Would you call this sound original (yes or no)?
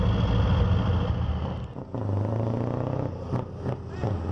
yes